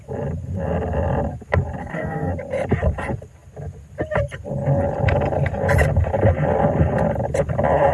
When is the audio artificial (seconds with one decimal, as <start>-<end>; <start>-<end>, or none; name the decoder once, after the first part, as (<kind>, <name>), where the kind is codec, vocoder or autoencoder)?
1.8-2.3 (codec, SNAC)